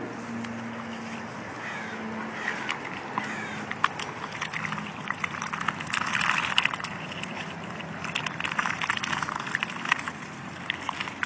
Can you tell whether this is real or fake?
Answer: real